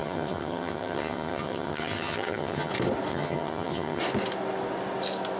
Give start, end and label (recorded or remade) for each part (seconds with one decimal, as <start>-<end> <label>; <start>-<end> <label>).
0.0-2.7 remade; 2.7-3.1 recorded; 3.1-4.0 remade; 4.0-5.4 recorded